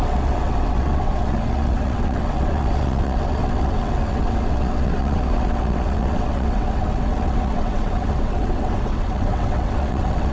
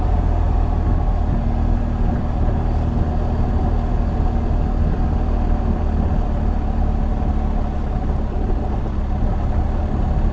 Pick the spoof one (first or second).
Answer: first